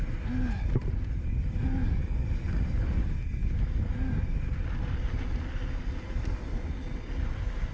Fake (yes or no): no